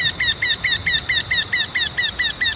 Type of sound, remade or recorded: recorded